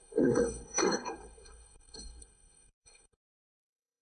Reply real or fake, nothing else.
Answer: fake